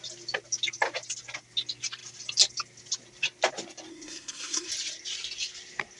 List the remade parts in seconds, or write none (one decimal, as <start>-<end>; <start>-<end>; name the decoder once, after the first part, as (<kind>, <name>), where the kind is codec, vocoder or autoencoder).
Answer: 3.9-4.7 (codec, SNAC)